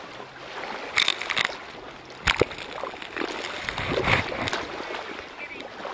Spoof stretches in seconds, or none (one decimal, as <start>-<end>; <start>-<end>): none